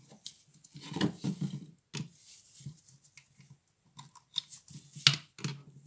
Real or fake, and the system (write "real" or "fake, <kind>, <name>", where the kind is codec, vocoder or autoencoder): real